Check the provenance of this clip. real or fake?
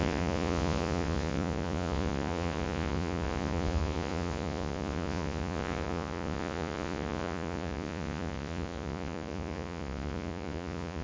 fake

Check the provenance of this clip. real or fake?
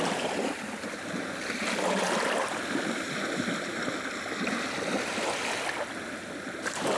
real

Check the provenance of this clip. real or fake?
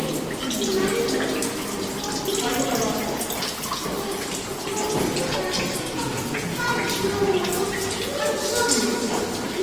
real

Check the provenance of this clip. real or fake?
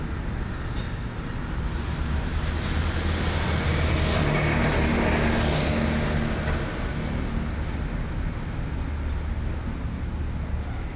real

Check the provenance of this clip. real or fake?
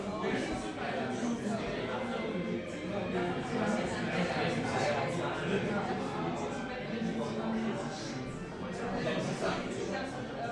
real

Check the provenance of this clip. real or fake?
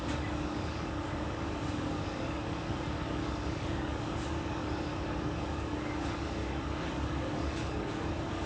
fake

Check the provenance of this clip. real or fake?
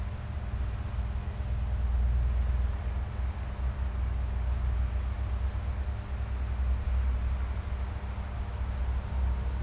real